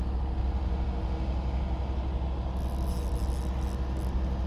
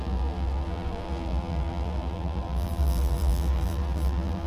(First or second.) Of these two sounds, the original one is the first